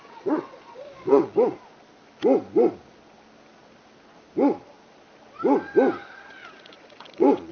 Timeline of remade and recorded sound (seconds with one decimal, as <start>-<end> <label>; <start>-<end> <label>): 0.0-1.6 remade; 1.6-6.1 recorded; 6.1-7.5 remade